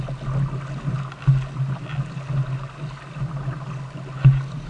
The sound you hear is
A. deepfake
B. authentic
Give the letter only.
B